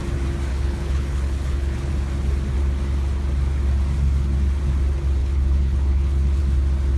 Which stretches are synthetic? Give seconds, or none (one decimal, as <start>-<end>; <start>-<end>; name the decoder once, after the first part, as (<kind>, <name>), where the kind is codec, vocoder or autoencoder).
0.5-1.9 (codec, HILCodec); 5.2-6.4